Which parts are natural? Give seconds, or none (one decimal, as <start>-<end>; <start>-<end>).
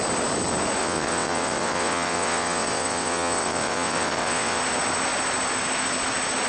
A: 0.0-0.8; 4.6-6.5